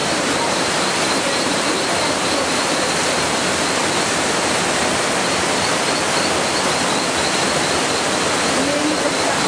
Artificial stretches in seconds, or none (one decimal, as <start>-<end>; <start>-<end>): 0.0-2.6